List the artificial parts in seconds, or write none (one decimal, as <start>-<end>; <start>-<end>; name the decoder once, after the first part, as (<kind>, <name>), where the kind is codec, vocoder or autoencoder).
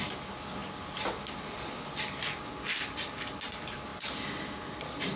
none